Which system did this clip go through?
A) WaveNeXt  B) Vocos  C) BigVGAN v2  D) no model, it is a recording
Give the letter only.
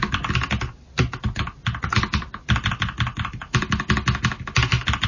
D